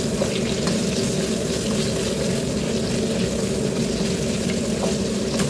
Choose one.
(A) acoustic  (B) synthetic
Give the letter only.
A